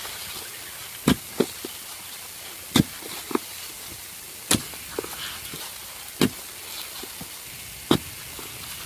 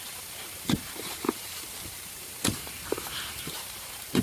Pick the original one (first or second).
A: first